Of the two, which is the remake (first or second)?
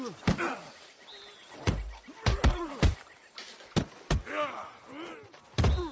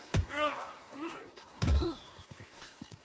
second